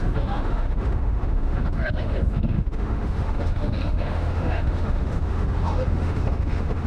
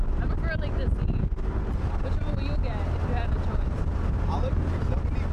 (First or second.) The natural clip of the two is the second